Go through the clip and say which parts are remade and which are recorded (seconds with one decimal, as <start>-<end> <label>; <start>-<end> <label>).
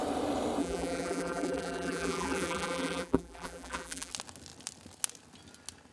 0.0-0.6 recorded; 0.6-4.1 remade; 4.1-5.9 recorded